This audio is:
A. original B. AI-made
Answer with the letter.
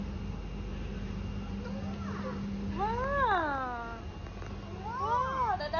A